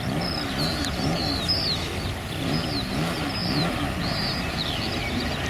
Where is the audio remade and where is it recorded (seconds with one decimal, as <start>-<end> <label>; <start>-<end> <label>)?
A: 0.0-0.7 recorded; 0.7-1.3 remade; 1.3-3.4 recorded; 3.4-4.2 remade; 4.2-5.5 recorded